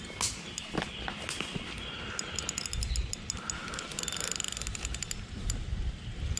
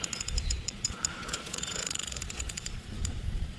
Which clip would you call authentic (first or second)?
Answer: first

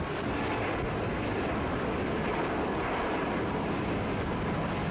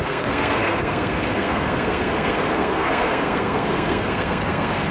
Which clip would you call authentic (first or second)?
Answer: first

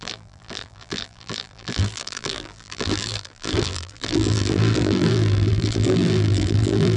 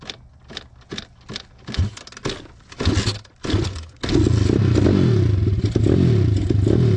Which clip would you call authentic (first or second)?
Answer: second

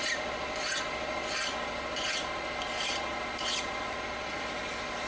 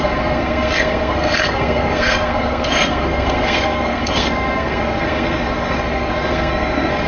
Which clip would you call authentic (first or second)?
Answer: first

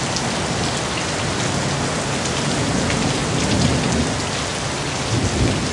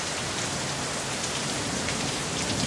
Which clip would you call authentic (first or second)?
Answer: first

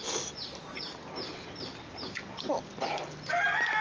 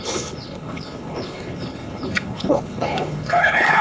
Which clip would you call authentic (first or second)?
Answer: first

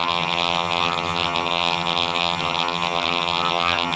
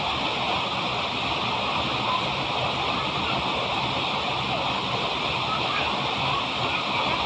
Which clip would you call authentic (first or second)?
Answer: second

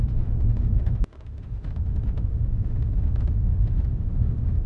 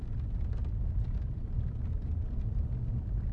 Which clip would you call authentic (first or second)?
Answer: second